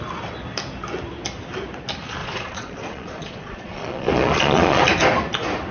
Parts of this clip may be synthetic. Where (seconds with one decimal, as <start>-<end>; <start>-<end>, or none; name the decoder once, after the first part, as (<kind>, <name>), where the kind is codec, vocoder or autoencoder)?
2.2-4.8 (vocoder, Vocos)